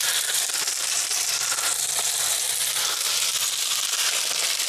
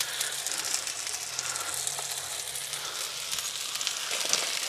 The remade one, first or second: first